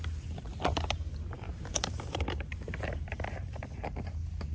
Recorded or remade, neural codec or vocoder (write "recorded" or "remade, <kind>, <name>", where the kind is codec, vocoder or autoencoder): remade, vocoder, BigVGAN v2